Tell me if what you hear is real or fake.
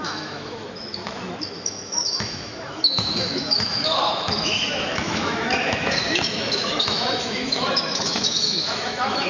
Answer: fake